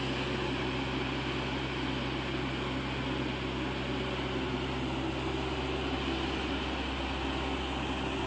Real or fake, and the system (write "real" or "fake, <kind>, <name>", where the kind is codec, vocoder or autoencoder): real